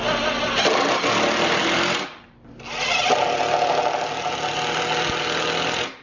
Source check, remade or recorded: recorded